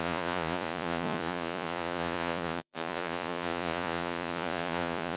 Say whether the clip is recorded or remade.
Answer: remade